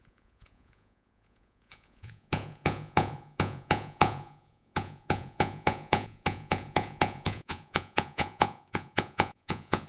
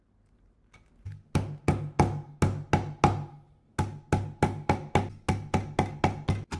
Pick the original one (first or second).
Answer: second